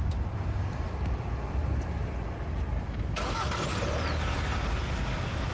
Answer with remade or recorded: recorded